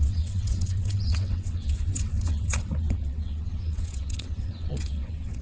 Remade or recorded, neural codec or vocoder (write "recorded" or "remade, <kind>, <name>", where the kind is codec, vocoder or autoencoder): remade, vocoder, WaveNeXt